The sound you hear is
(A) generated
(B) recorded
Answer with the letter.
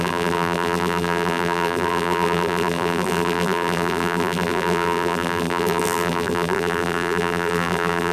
A